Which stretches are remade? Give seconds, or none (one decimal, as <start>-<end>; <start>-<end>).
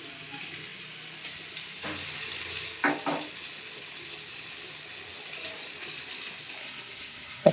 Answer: 6.6-7.5